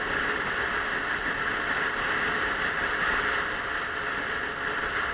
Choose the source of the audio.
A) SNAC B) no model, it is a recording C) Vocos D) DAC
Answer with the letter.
B